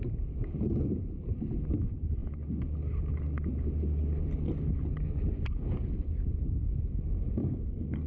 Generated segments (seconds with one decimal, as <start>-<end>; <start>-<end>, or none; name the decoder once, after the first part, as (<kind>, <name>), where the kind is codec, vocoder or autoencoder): 7.4-8.1 (codec, DAC)